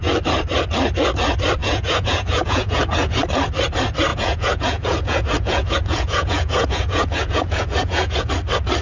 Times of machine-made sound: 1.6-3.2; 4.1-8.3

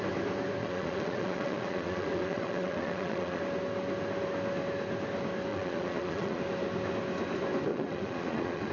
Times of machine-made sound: 0.6-3.4; 5.5-6.4; 7.7-8.7

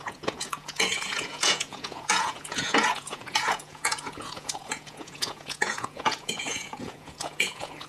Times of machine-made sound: 0.0-7.9

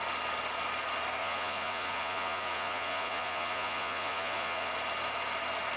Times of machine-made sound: 1.2-4.7

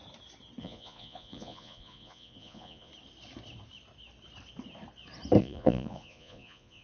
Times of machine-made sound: 0.6-2.9; 5.4-6.8

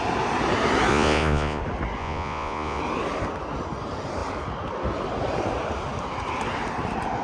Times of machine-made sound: 0.9-1.6; 2.0-2.8